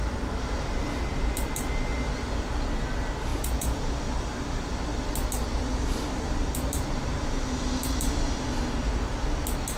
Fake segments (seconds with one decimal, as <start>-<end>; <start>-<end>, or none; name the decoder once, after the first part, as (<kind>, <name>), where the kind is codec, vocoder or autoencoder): 3.3-4.0 (vocoder, Vocos)